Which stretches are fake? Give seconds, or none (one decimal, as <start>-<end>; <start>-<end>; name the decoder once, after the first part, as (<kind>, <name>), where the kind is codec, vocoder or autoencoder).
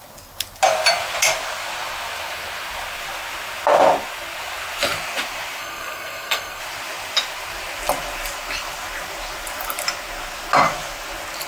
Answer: 5.6-6.6 (codec, SNAC)